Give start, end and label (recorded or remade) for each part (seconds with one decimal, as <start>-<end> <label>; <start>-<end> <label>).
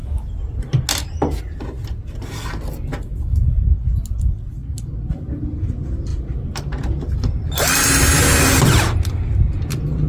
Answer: 0.0-10.1 recorded